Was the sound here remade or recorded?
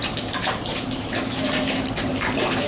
remade